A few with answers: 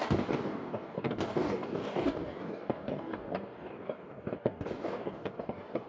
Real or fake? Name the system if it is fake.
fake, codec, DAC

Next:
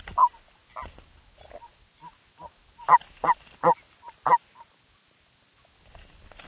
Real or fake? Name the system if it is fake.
real